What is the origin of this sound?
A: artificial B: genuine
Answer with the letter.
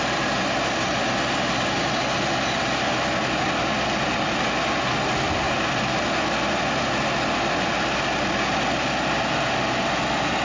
B